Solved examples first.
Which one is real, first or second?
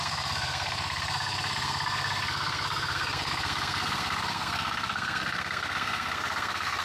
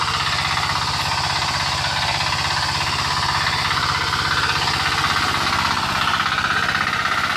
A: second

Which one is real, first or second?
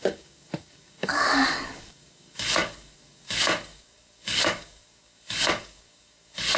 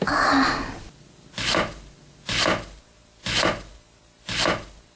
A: second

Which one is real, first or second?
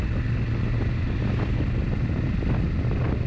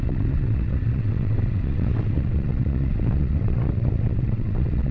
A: first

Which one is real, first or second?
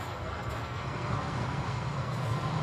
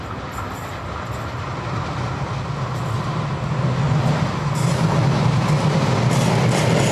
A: second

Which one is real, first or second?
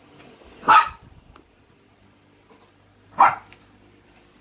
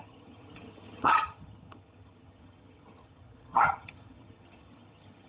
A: first